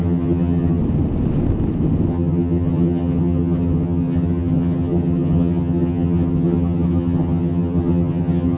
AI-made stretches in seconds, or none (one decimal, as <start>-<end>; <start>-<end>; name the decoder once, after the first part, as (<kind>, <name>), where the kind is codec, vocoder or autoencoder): 0.0-0.8 (vocoder, HiFi-GAN); 2.1-8.6